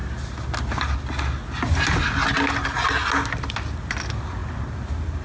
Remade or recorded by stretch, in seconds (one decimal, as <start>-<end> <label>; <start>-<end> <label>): 0.0-5.2 recorded